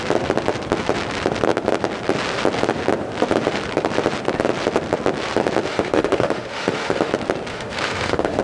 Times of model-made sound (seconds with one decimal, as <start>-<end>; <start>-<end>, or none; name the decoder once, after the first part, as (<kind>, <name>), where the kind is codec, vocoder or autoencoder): 5.7-7.1 (autoencoder, DAC-VAE); 7.5-8.4